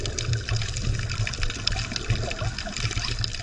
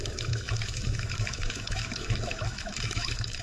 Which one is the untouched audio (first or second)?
first